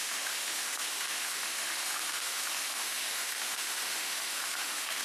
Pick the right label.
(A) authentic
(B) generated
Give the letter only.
B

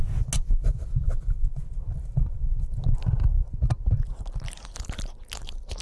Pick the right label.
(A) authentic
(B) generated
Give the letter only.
A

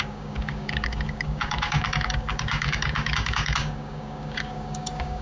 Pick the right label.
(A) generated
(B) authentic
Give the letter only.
A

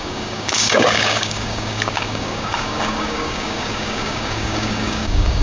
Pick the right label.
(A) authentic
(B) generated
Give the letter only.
B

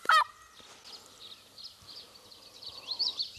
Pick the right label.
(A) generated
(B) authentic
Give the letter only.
B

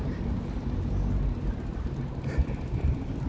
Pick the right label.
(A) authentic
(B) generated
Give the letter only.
A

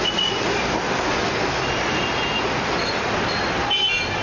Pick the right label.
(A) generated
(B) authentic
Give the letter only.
B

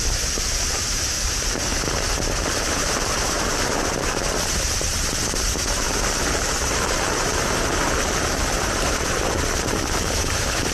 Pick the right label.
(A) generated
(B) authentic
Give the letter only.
A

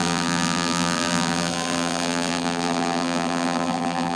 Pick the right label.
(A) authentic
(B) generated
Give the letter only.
B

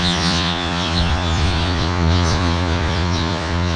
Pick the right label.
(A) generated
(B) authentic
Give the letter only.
A